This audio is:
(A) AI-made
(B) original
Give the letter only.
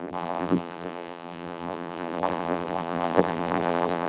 A